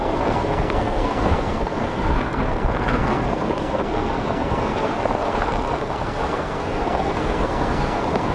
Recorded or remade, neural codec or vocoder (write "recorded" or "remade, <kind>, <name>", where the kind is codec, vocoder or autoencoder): remade, codec, SNAC